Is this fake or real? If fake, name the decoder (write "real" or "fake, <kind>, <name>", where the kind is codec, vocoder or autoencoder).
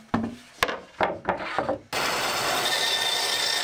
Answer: real